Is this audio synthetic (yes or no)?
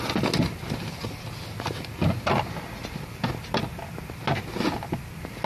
no